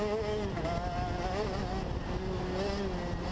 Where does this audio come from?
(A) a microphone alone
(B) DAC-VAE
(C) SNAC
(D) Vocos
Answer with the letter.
A